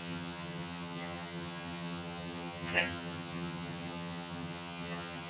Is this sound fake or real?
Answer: fake